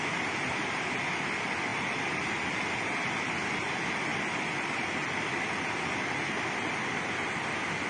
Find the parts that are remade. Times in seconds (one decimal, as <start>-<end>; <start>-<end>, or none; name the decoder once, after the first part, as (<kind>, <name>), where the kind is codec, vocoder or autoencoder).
1.7-2.6 (vocoder, BigVGAN v2); 4.1-5.7